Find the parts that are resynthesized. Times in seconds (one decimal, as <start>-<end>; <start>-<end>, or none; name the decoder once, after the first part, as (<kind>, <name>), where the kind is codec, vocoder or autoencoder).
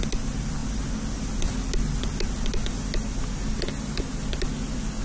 none